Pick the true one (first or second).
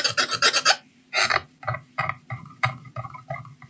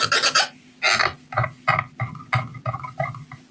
second